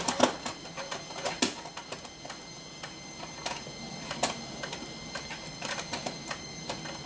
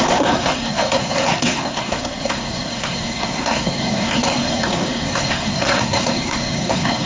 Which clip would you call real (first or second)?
first